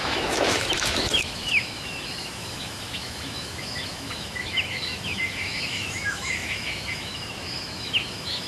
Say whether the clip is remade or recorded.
remade